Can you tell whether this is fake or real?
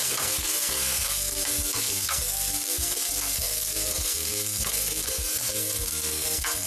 fake